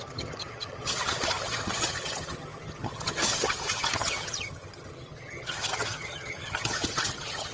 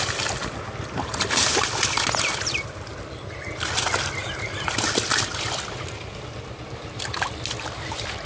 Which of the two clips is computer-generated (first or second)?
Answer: first